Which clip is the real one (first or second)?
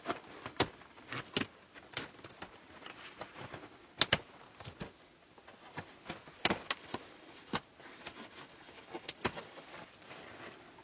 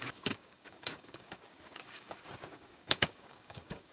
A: first